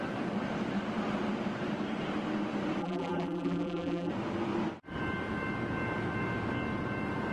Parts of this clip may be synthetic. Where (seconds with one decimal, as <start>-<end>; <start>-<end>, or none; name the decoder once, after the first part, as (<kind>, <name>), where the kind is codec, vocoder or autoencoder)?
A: 2.8-4.1 (vocoder, BigVGAN v2)